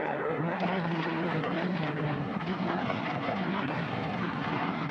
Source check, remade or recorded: remade